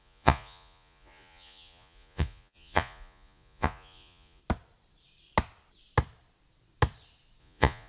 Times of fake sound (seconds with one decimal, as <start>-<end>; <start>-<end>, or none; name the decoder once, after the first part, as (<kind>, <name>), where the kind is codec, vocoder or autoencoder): 0.0-4.4 (vocoder, Vocos); 7.4-7.9